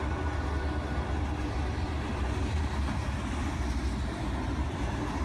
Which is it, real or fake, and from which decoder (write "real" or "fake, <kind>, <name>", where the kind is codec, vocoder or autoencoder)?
real